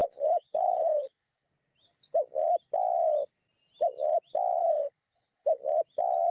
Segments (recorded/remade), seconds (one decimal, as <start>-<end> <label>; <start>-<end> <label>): 0.0-1.5 remade; 1.5-4.6 recorded; 4.6-5.6 remade; 5.6-6.3 recorded